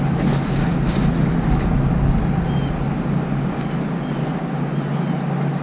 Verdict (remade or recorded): recorded